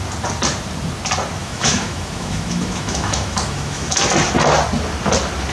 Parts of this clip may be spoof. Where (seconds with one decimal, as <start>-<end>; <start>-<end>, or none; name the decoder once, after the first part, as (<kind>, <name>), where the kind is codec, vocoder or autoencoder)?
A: 1.4-4.0 (autoencoder, DAC-VAE)